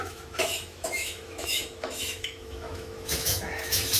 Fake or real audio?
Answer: fake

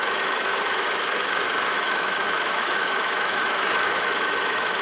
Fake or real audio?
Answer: fake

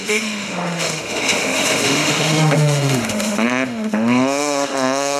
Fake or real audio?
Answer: fake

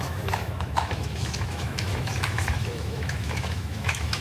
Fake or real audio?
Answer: fake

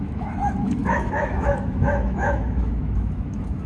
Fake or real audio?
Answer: fake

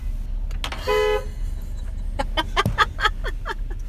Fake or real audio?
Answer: real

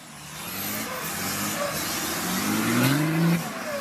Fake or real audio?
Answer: real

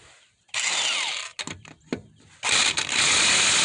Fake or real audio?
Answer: real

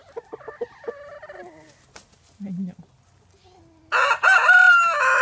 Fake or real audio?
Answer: real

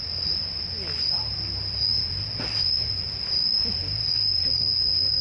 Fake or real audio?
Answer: real